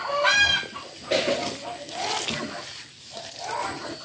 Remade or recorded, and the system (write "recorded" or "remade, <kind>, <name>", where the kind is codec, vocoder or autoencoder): recorded